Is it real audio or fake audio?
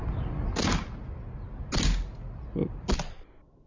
real